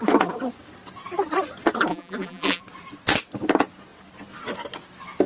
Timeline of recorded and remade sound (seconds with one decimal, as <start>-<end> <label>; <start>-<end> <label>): 0.0-1.9 recorded; 1.9-2.6 remade; 2.6-5.3 recorded